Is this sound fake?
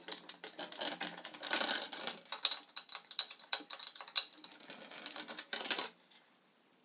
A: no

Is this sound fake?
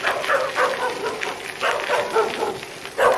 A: no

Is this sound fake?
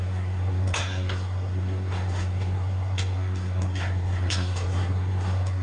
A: yes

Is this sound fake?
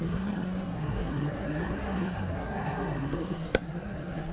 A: yes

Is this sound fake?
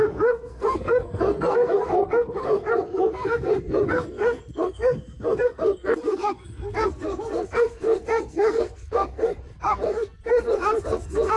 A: yes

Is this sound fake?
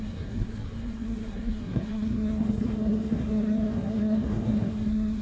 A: yes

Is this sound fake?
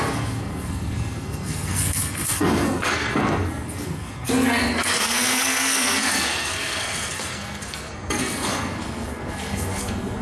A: yes